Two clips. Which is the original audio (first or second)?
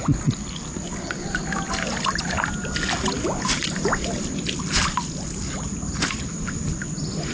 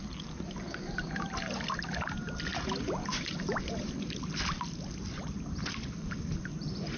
first